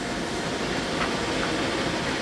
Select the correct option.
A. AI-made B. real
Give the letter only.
B